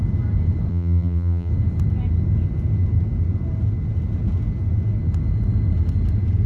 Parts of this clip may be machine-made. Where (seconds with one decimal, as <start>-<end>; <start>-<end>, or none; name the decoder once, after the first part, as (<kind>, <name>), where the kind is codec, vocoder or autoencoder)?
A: 0.7-1.5 (vocoder, BigVGAN v2)